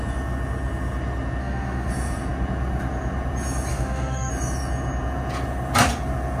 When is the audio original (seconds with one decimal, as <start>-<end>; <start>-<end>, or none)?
0.0-1.4; 1.9-3.7; 4.3-6.4